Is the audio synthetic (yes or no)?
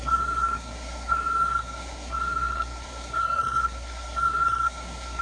yes